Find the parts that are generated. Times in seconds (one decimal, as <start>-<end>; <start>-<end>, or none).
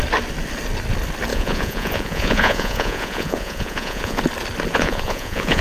1.3-4.2; 4.7-5.6